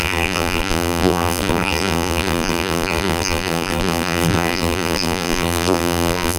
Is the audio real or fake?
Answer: fake